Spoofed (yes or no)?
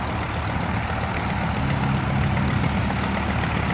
no